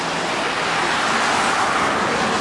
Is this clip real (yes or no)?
yes